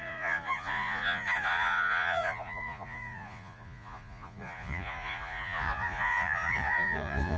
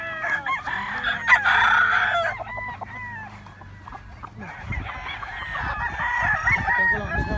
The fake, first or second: first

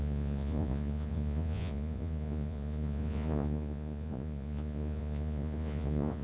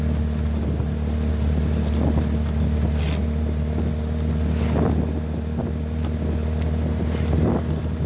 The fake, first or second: first